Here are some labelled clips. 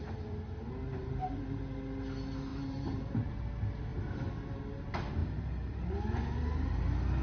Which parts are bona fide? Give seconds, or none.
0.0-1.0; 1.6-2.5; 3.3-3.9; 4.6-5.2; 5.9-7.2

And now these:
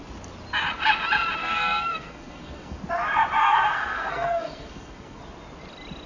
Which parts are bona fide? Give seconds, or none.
0.0-1.4; 2.8-3.4; 5.2-6.1